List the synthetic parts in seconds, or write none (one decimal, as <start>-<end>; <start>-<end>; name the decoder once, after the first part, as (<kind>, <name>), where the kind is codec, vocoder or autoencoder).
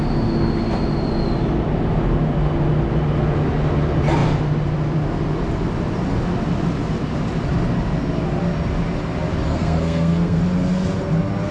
9.5-10.4 (codec, SNAC)